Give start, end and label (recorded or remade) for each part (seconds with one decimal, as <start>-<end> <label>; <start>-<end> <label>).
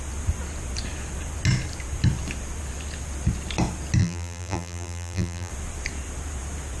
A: 0.0-4.0 recorded; 4.0-5.5 remade; 5.5-6.8 recorded